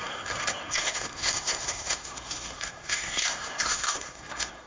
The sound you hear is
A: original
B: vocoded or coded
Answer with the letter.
B